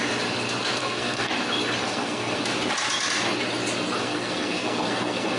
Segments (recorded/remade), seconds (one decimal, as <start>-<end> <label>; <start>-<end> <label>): 0.0-0.8 recorded; 0.8-1.3 remade; 1.3-1.8 recorded; 1.8-2.4 remade; 2.4-4.0 recorded; 4.0-5.4 remade